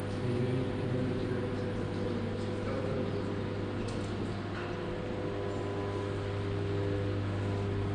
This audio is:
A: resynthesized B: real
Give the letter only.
B